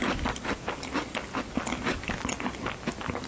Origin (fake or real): real